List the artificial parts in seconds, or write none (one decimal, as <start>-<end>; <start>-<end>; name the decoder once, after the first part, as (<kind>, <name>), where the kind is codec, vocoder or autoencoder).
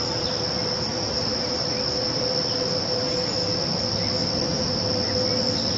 none